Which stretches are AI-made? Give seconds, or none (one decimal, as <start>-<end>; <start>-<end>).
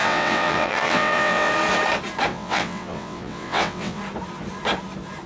0.0-1.5; 2.3-4.0